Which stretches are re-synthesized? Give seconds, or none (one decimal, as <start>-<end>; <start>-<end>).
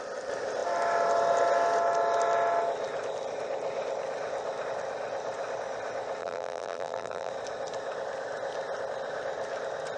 6.2-7.3